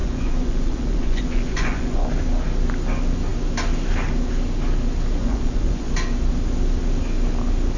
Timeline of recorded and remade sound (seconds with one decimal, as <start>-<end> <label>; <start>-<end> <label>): 0.0-2.1 remade; 2.1-5.2 recorded; 5.2-5.9 remade; 5.9-7.8 recorded